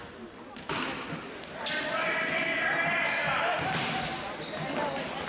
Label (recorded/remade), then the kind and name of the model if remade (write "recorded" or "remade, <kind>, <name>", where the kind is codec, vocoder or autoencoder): recorded